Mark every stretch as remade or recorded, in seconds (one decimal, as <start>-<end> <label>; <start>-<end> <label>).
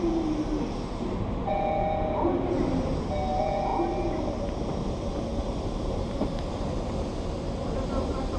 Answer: 0.0-8.4 recorded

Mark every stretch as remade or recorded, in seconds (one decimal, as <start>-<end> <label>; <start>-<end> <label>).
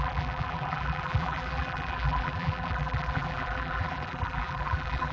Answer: 0.0-5.1 remade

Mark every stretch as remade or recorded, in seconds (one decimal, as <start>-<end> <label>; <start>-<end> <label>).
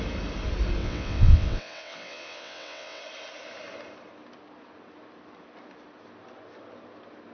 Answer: 0.0-0.8 recorded; 0.8-3.0 remade; 3.0-7.3 recorded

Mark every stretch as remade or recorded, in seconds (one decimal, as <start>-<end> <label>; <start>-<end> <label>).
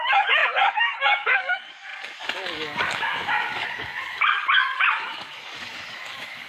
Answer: 0.0-6.5 remade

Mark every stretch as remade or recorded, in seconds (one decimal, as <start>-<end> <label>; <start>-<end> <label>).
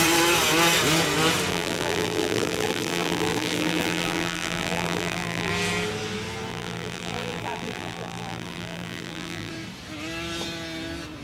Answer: 0.0-1.5 recorded; 1.5-5.5 remade; 5.5-6.5 recorded; 6.5-9.5 remade; 9.5-11.2 recorded